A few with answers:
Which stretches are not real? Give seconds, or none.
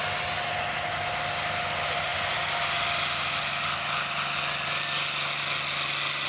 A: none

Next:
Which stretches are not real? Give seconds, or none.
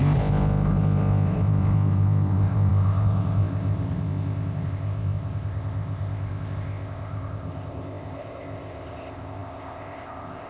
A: 0.0-10.5 (codec, ZipCodec)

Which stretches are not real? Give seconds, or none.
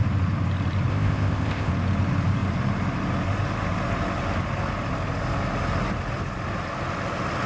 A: 0.9-1.7 (codec, ZipCodec)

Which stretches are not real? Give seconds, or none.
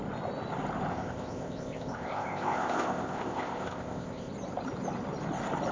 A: 0.9-4.3 (codec, ZipCodec)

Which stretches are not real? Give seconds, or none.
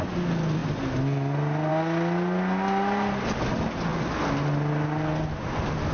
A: none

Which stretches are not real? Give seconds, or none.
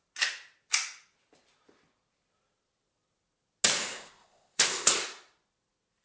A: 3.8-5.0 (codec, ZipCodec)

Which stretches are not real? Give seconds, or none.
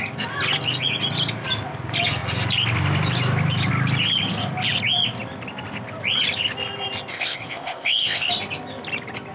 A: 7.1-8.3 (codec, ZipCodec)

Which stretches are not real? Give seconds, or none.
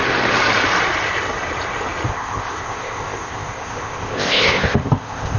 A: 2.1-5.4 (codec, ZipCodec)